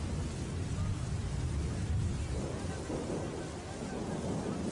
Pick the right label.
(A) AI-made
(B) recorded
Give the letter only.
B